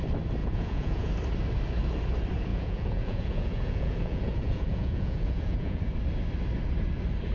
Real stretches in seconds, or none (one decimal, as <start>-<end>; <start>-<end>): 0.0-0.4; 1.1-2.5; 5.8-7.3